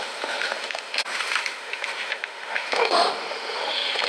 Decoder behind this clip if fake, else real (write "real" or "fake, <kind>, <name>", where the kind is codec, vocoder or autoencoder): fake, autoencoder, DAC-VAE